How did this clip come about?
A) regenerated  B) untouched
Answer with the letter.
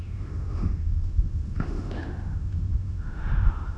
A